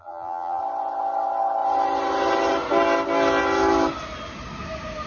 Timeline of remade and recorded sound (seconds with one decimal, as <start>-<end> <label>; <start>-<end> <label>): 0.0-0.6 remade; 0.6-5.1 recorded